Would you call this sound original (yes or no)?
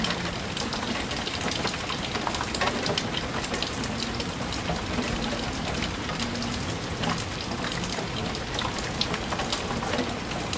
no